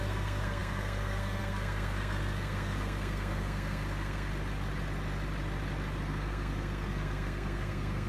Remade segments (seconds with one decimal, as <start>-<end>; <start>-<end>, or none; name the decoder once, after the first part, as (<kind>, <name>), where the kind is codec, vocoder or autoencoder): 0.0-4.3 (codec, SNAC); 6.0-8.1